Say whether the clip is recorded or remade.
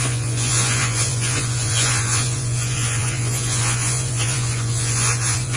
remade